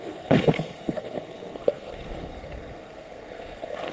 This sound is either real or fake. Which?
fake